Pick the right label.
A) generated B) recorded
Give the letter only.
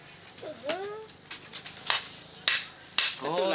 B